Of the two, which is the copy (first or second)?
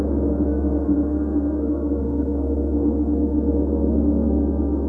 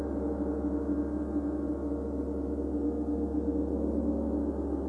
first